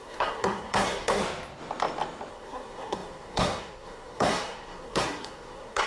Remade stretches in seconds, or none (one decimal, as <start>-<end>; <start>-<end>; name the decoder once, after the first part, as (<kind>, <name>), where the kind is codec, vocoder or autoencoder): 0.0-1.2 (codec, SNAC); 2.3-5.9